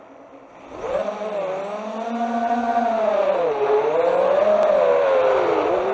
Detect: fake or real real